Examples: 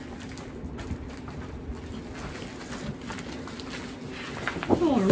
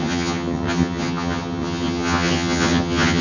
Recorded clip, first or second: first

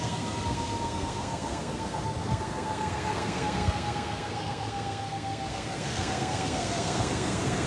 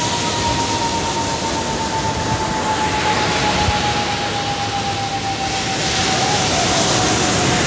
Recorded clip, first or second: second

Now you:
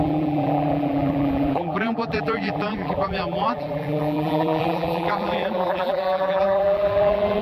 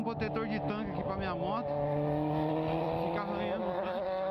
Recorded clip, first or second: second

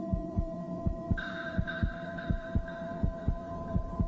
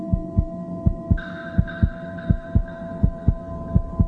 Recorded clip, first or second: second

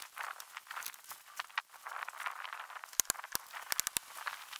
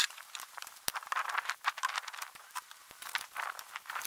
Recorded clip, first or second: first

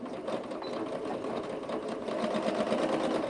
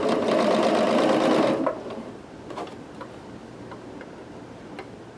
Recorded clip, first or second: first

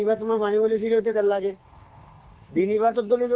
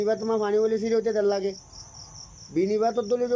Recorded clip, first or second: second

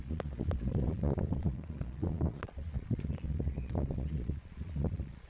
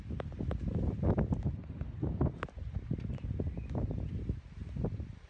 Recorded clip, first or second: second